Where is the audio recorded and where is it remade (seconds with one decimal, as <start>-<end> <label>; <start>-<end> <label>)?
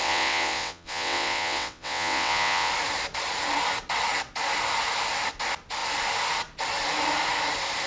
0.0-2.7 remade; 2.7-7.9 recorded